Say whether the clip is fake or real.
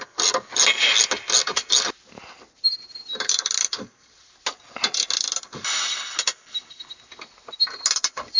real